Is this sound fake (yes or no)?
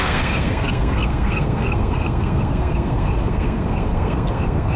yes